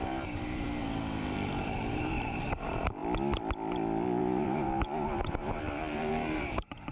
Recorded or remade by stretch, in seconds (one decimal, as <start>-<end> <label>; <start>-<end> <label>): 0.0-0.8 remade; 0.8-1.6 recorded; 1.6-3.0 remade; 3.0-4.2 recorded; 4.2-6.9 remade